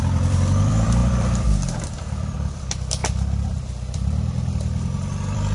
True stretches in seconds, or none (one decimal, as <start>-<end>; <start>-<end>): none